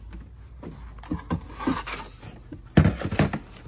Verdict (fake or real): real